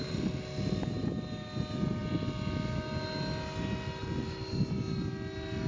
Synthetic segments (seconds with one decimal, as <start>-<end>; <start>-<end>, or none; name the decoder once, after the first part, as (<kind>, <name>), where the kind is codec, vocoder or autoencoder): none